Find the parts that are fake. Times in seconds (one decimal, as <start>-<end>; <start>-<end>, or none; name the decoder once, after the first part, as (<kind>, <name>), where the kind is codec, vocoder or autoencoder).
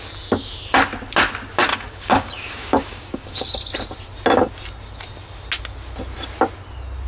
1.7-3.5 (codec, DAC)